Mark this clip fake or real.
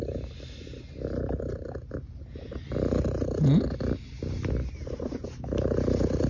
real